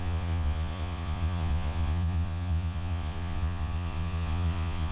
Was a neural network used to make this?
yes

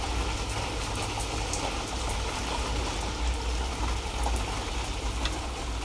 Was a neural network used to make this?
no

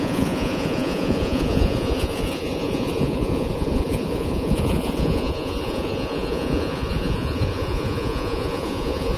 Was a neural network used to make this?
yes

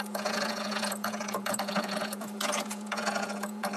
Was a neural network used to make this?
yes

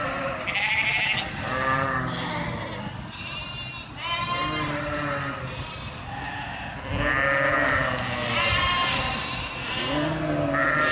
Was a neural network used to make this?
no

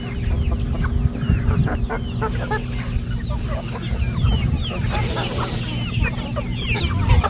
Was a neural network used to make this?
no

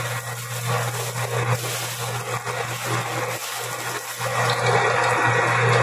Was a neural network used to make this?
no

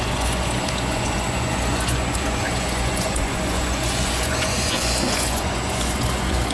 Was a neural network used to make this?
yes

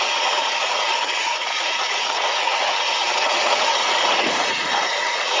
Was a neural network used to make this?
yes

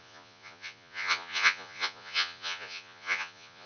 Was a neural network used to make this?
yes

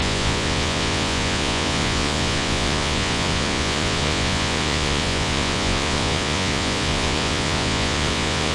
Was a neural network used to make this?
yes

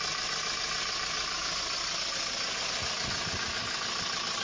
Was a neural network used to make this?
no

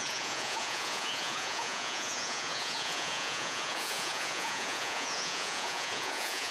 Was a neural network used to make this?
yes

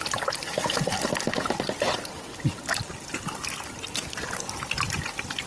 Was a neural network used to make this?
no